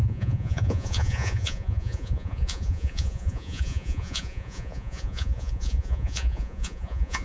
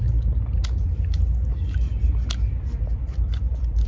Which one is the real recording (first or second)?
second